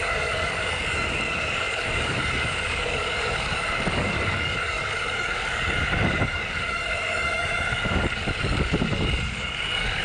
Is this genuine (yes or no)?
no